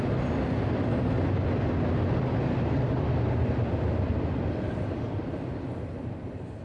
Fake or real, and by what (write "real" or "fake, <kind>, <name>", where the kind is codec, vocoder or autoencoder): real